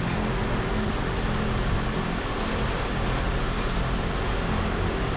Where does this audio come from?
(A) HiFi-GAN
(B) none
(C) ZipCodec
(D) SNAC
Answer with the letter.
B